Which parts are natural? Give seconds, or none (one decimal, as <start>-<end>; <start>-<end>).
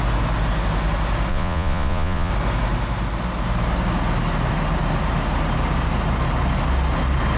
0.0-1.3; 2.3-7.4